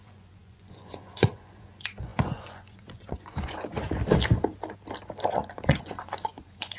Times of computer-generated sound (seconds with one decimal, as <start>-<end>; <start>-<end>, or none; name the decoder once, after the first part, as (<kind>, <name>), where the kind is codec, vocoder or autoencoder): 0.0-3.8 (vocoder, Vocos); 5.3-6.8